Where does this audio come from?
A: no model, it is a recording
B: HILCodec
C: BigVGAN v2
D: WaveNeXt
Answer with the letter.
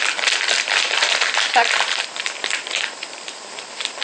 C